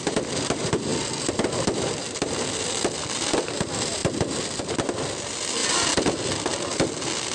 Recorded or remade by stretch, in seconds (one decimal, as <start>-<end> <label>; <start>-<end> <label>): 0.0-7.3 remade

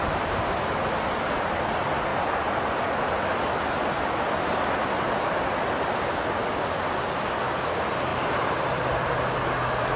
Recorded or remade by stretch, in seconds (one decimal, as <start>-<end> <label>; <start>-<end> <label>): 0.0-2.1 recorded; 2.1-4.6 remade; 4.6-8.1 recorded; 8.1-8.9 remade; 8.9-10.0 recorded

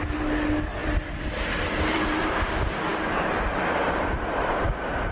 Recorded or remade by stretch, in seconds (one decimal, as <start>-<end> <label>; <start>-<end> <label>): 0.0-0.8 recorded; 0.8-2.3 remade; 2.3-5.1 recorded

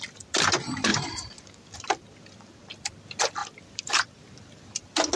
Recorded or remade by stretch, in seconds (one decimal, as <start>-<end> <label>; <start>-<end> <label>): 0.0-0.9 recorded; 0.9-2.7 remade; 2.7-3.4 recorded; 3.4-4.7 remade; 4.7-5.2 recorded

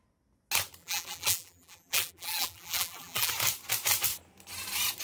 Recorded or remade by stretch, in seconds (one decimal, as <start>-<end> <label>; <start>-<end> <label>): 0.0-0.8 recorded; 0.8-3.3 remade; 3.3-5.0 recorded

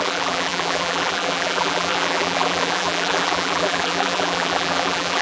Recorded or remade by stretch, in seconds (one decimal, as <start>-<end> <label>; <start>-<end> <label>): 0.0-5.2 remade

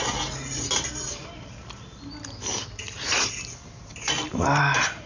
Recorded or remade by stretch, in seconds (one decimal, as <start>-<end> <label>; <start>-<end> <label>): 0.0-2.5 recorded; 2.5-4.2 remade; 4.2-5.1 recorded

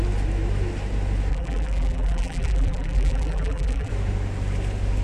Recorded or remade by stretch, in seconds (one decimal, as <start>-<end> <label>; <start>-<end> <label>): 0.0-1.3 recorded; 1.3-3.9 remade; 3.9-5.0 recorded